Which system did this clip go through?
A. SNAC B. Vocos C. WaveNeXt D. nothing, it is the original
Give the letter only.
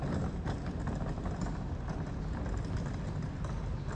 D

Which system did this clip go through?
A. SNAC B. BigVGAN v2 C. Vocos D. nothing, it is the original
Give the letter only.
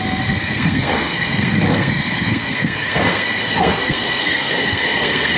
A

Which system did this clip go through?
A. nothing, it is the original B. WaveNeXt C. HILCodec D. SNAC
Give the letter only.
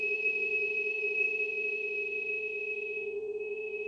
B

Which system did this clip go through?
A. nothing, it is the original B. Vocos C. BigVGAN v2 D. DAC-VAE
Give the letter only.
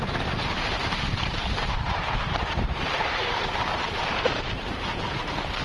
C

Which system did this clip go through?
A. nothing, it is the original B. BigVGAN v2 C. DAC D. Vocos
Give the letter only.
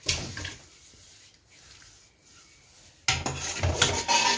A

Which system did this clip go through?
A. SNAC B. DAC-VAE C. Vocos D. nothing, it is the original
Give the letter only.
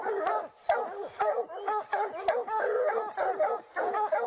D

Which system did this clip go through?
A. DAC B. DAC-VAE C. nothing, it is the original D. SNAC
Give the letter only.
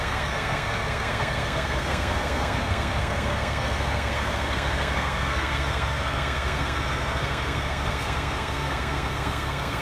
D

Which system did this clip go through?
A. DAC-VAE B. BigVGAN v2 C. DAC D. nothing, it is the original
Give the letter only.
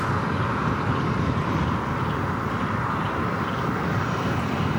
D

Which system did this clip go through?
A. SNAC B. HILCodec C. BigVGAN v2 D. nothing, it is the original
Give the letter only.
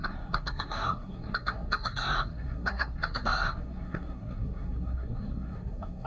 A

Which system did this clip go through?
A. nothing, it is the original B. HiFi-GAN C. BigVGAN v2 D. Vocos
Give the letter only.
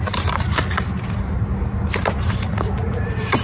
C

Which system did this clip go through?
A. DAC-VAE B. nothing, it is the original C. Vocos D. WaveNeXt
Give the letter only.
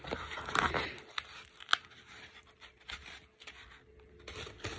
B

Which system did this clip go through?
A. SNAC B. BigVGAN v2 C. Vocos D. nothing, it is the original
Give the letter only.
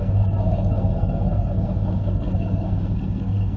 A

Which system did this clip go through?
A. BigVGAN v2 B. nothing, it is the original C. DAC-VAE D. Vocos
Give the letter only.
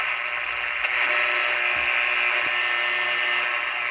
B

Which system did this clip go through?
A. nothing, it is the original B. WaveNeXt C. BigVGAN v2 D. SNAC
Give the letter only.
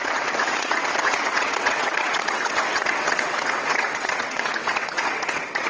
B